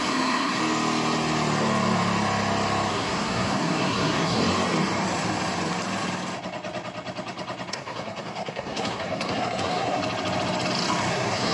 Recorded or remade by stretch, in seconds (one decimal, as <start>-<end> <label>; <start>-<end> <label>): 0.0-0.6 remade; 0.6-2.9 recorded; 2.9-4.4 remade; 4.4-7.7 recorded; 7.7-10.0 remade; 10.0-11.1 recorded; 11.1-11.5 remade